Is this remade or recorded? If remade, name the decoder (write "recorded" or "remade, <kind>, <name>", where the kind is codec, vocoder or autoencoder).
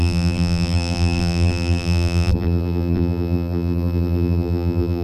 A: remade, vocoder, BigVGAN v2